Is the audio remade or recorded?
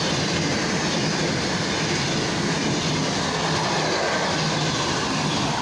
recorded